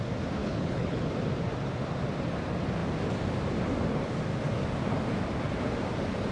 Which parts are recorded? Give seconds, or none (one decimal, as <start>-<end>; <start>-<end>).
0.0-0.4; 1.1-6.3